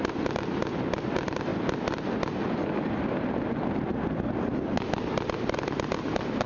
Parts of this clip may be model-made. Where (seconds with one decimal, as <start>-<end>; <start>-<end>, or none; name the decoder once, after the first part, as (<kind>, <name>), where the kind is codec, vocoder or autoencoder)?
none